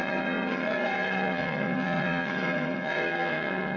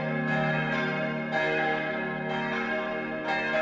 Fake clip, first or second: first